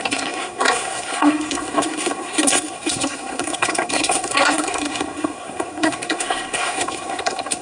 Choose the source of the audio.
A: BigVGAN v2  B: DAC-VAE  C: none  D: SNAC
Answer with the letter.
D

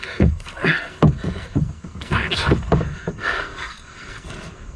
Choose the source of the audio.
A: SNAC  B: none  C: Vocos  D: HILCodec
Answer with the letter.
A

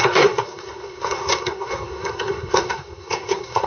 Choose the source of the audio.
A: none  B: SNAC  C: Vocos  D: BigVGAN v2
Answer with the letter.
B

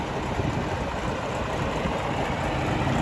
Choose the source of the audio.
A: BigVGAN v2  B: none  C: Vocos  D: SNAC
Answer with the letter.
B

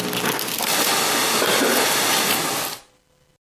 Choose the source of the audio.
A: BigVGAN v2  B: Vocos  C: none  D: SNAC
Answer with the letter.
C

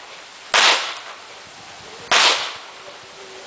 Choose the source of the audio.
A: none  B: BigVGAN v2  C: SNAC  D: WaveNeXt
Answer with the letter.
A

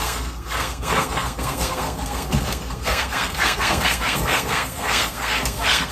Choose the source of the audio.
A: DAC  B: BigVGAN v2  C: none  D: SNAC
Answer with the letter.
D